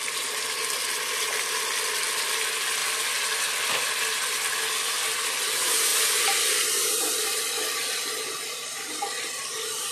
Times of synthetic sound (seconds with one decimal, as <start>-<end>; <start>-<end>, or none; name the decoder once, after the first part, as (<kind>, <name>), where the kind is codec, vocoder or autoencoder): none